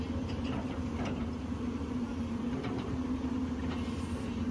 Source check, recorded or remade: remade